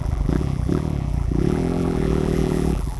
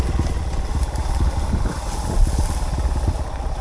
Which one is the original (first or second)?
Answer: second